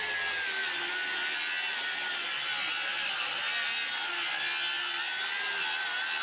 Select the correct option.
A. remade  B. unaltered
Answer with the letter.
B